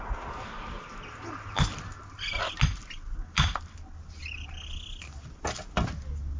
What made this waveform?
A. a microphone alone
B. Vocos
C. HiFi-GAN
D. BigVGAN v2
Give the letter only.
A